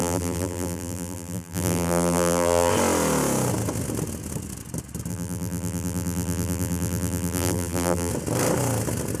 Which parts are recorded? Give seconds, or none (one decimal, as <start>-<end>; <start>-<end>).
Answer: 2.7-5.1; 8.1-9.2